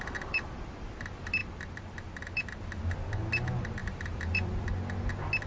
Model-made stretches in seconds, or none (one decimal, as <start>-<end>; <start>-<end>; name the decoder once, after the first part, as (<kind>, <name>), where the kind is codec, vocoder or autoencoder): 0.0-1.0 (vocoder, BigVGAN v2); 1.4-2.6; 3.8-4.7